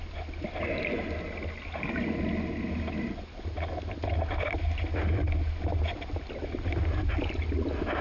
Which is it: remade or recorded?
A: recorded